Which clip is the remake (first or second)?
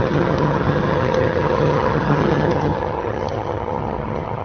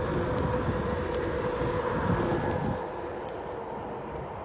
first